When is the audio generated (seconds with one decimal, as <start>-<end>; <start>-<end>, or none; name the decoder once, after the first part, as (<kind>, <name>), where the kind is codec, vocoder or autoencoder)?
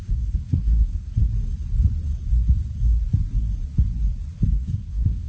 0.0-1.3 (codec, SNAC); 4.5-5.3